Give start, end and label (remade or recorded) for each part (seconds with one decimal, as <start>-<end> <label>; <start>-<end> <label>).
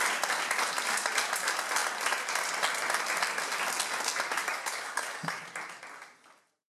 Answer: 0.0-4.4 recorded; 4.4-5.4 remade; 5.4-6.7 recorded